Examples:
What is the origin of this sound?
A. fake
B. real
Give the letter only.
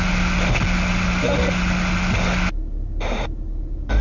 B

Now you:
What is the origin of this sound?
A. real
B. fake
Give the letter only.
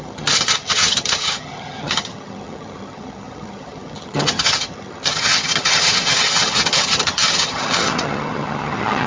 B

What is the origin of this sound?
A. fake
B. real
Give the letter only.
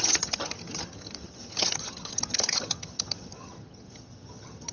A